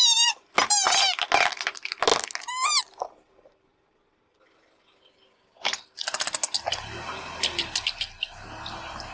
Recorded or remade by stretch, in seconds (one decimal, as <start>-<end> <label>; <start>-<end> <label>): 0.0-9.1 recorded